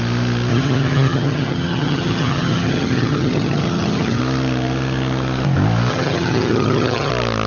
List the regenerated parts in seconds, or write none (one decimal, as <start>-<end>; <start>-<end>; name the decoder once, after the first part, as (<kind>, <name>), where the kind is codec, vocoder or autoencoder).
0.5-4.2 (vocoder, HiFi-GAN); 5.9-7.1